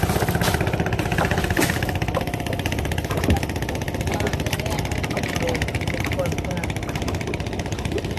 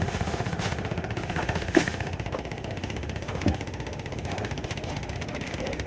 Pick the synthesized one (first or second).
second